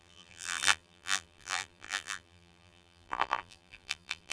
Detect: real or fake fake